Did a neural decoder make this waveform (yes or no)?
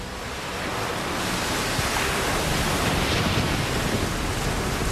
no